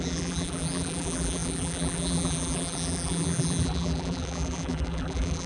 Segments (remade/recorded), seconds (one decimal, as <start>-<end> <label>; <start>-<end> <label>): 0.0-5.5 remade